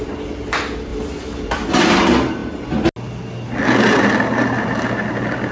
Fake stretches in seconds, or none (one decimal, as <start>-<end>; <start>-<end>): none